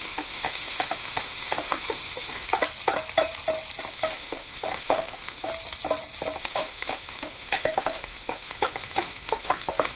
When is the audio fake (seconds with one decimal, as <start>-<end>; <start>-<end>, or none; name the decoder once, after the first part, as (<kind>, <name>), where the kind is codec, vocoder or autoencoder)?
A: 0.0-2.5 (autoencoder, DAC-VAE); 3.9-5.5; 6.4-9.9